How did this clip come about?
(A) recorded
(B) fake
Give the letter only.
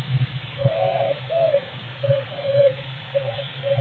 B